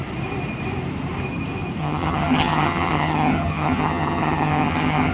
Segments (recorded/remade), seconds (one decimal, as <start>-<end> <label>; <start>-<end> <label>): 0.0-1.8 recorded; 1.8-5.1 remade